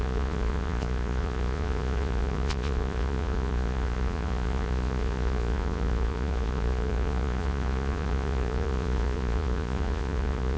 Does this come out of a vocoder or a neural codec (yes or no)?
yes